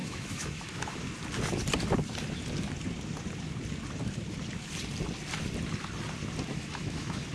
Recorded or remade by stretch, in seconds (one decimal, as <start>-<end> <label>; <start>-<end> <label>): 0.0-1.1 remade; 1.1-6.5 recorded; 6.5-7.3 remade